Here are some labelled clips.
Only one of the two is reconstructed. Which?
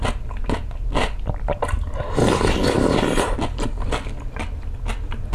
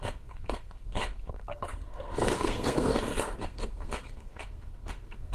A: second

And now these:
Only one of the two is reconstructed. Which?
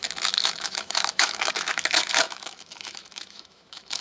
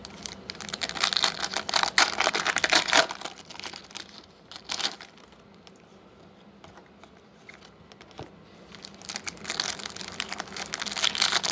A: first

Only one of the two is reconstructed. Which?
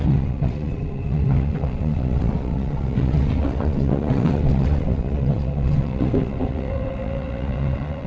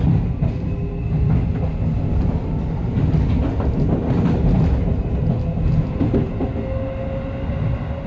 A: first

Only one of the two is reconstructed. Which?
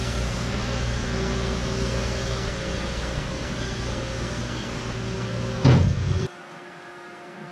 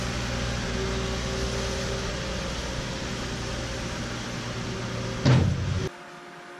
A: first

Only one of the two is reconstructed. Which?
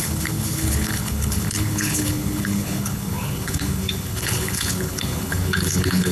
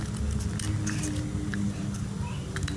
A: first